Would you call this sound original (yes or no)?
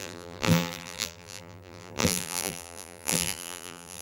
no